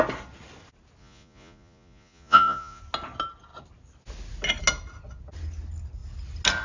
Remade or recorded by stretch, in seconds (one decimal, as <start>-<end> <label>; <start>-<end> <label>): 0.0-1.0 recorded; 1.0-2.8 remade; 2.8-6.6 recorded